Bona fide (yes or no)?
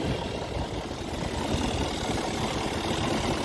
yes